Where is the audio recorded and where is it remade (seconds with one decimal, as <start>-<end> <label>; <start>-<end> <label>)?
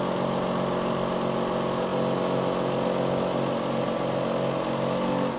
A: 0.0-5.4 recorded